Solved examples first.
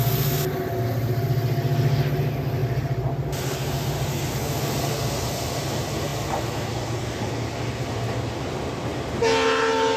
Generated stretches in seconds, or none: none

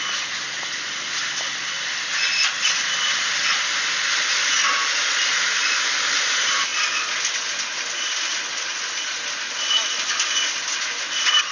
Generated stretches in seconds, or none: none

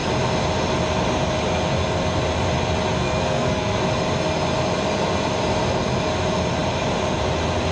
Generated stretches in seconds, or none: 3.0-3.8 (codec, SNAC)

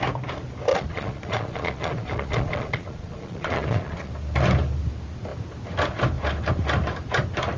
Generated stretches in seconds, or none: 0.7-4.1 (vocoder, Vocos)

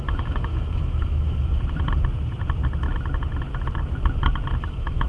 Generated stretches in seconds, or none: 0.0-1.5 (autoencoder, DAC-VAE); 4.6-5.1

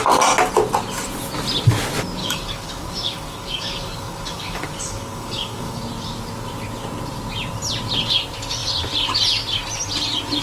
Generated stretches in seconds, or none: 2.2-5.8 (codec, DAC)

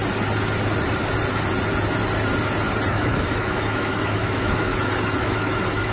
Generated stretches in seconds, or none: 2.9-4.7 (autoencoder, DAC-VAE); 5.2-5.9